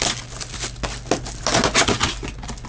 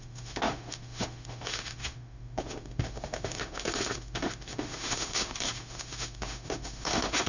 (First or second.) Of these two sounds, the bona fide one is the first